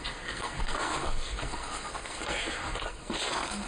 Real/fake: fake